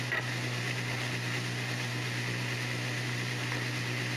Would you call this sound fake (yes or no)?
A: no